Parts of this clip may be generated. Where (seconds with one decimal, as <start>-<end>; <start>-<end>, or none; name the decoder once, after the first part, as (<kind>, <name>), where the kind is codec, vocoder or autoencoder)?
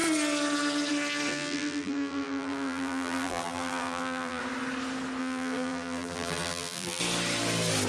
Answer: 1.3-4.4 (vocoder, BigVGAN v2); 5.2-7.0